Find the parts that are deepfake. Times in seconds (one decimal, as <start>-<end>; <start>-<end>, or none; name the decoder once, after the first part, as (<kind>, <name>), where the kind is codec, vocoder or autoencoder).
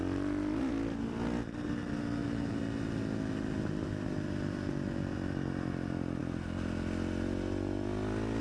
none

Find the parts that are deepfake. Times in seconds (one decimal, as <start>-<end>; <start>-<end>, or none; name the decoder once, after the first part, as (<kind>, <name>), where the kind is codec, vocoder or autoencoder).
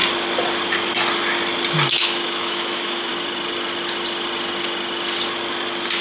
1.9-3.1 (autoencoder, DAC-VAE)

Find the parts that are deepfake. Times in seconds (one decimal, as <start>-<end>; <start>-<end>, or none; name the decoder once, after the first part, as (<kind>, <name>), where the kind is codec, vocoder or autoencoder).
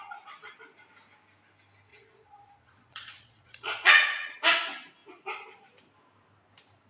1.9-4.3 (vocoder, Vocos)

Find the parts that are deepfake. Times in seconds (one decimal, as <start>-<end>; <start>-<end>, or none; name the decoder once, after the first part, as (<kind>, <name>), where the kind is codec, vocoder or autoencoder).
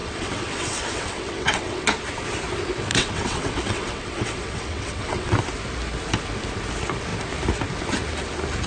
0.0-1.8 (vocoder, WaveNeXt); 2.9-5.3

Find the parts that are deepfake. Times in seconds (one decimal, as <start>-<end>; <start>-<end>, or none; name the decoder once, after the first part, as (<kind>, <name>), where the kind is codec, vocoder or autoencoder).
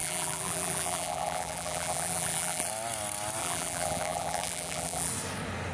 0.0-2.7 (vocoder, BigVGAN v2); 3.4-5.1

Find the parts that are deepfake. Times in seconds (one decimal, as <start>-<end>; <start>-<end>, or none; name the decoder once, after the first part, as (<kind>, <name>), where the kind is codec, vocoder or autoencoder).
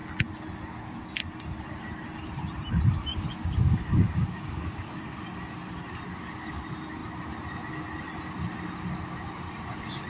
3.1-4.9 (codec, DAC)